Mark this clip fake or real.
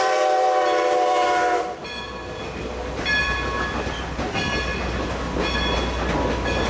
real